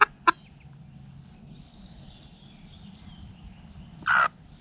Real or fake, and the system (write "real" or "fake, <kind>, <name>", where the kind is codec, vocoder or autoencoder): real